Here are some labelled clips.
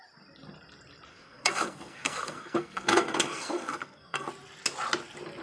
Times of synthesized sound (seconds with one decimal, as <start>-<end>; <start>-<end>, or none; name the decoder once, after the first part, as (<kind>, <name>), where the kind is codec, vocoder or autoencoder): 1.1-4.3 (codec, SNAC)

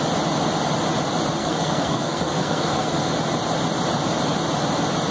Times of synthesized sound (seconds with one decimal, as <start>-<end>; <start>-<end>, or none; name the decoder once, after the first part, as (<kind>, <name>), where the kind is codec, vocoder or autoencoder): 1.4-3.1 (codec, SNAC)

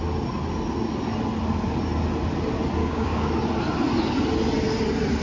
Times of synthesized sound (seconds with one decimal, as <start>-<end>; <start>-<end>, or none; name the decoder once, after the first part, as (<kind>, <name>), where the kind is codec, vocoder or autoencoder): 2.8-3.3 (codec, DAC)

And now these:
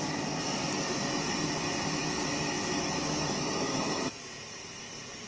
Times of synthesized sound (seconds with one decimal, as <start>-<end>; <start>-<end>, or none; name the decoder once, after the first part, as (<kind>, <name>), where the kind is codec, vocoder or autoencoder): 2.0-4.2 (autoencoder, DAC-VAE)

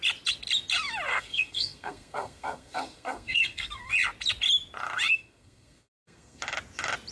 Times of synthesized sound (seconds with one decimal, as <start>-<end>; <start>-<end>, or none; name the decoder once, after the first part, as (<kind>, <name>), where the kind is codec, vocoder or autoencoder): 1.1-3.9 (codec, SNAC); 5.1-6.4